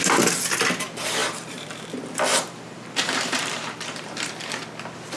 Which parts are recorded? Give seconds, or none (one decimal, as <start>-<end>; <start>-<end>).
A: 0.0-1.2; 1.8-2.3; 4.3-5.2